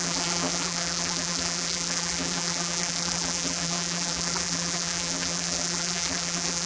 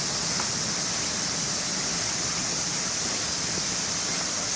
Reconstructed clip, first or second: first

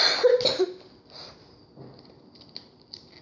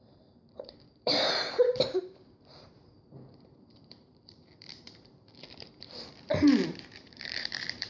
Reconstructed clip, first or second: second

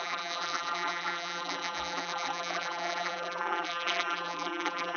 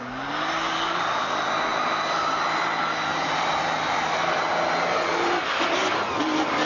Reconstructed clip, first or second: first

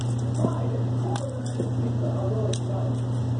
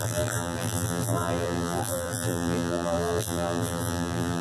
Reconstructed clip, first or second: second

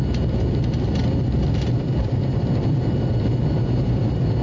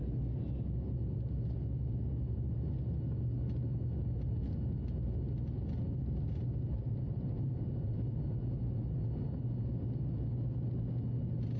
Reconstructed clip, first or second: first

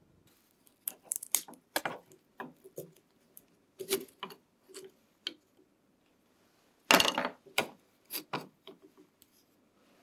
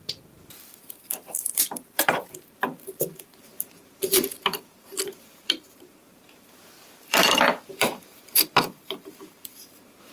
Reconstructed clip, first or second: second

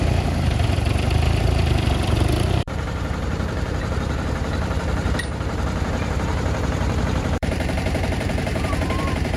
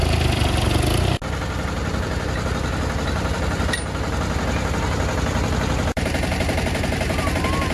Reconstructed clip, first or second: first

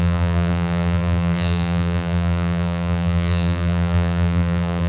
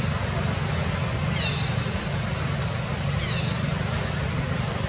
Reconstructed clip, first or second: first